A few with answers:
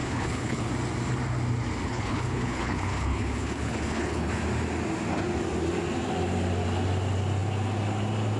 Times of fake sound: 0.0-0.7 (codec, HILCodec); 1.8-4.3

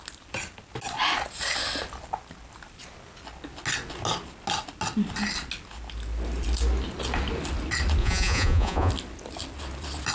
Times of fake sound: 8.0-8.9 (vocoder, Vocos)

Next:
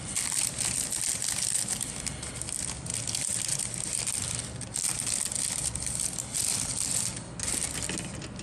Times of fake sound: none